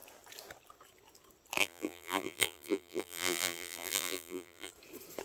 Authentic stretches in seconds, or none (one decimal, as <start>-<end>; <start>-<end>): 0.0-1.6; 4.7-5.2